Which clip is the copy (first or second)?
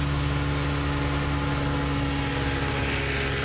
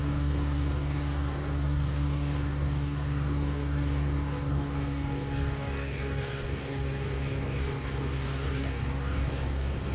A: second